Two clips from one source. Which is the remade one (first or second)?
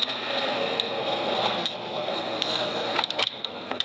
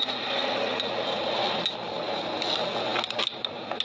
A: first